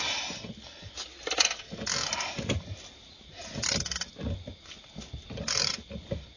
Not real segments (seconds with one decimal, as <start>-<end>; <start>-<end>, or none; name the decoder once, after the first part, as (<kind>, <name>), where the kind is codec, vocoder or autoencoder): none

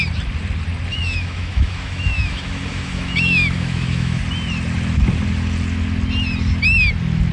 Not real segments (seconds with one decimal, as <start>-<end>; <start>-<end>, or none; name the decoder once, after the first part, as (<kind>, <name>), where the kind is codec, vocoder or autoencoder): 0.9-4.2 (autoencoder, DAC-VAE)

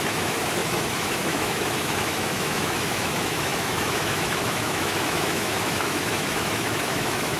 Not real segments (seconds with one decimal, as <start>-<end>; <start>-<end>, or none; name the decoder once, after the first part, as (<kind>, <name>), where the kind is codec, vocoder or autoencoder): 0.0-7.4 (autoencoder, DAC-VAE)

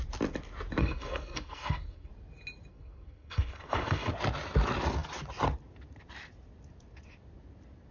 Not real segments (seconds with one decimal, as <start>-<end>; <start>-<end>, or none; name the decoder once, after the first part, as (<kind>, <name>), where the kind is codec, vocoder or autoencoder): 0.8-2.1 (codec, SNAC); 2.7-4.1

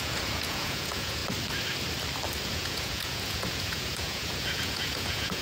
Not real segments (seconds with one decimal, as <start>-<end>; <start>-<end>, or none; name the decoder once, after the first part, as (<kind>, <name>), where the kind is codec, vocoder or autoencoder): 0.0-1.2 (vocoder, Vocos); 2.5-5.4

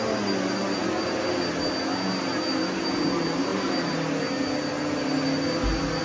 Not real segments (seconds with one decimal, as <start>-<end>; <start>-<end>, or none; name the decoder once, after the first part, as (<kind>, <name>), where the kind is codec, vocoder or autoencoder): none